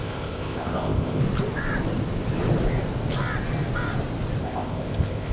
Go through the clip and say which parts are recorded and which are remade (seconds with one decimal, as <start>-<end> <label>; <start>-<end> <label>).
0.0-1.2 remade; 1.2-4.4 recorded; 4.4-5.3 remade